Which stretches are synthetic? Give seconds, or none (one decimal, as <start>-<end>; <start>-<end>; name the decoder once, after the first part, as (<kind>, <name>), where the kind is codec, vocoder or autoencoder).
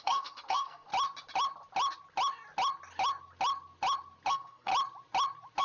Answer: 0.0-0.9 (codec, SNAC); 4.3-4.7